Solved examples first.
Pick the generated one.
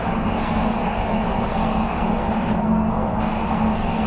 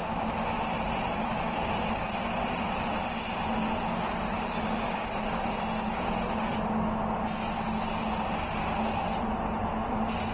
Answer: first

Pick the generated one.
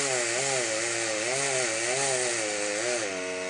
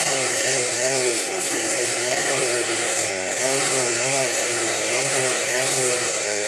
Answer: second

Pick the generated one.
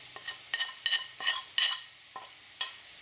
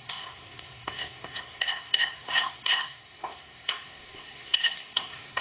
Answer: second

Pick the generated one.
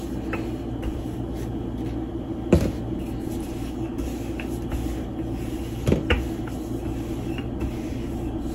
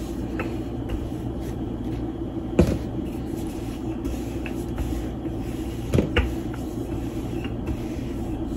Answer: second